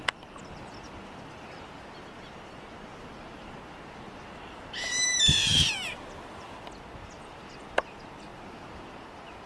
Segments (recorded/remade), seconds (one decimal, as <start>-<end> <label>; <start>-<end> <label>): 0.0-2.9 recorded; 2.9-3.5 remade; 3.5-5.1 recorded; 5.1-5.7 remade; 5.7-7.0 recorded; 7.0-7.5 remade; 7.5-9.5 recorded